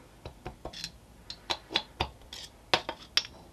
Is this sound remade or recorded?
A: recorded